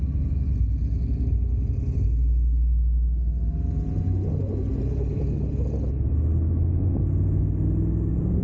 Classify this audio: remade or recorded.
recorded